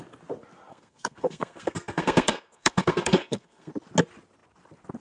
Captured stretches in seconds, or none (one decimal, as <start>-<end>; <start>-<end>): 0.0-0.7; 3.7-5.0